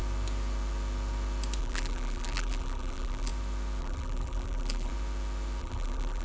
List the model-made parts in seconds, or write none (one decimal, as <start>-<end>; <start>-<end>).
1.6-3.3; 3.8-4.9; 5.6-6.2